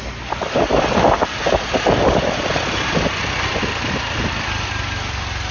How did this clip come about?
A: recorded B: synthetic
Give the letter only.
A